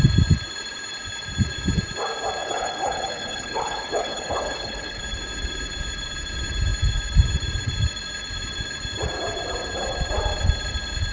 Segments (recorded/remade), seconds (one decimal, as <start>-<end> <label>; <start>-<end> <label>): 0.0-2.4 recorded; 2.4-5.0 remade; 5.0-11.1 recorded